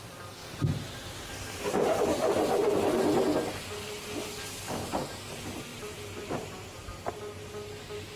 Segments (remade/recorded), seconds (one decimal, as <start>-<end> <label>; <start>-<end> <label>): 0.0-0.4 recorded; 0.4-2.3 remade; 2.3-5.7 recorded; 5.7-7.1 remade; 7.1-8.2 recorded